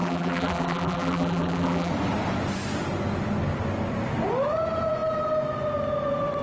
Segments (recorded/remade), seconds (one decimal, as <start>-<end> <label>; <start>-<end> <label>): 0.0-1.9 remade; 1.9-6.4 recorded